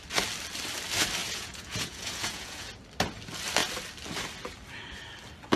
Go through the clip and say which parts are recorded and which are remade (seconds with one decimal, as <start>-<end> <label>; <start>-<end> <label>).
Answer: 0.0-1.2 recorded; 1.2-2.7 remade; 2.7-5.6 recorded